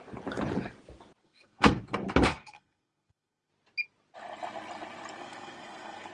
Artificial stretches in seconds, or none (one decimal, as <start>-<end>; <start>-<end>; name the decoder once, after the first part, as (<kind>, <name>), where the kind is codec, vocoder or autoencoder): 1.2-1.8 (codec, SNAC); 2.3-3.5; 5.2-6.1